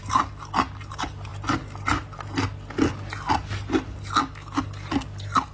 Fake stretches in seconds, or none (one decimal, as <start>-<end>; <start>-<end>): none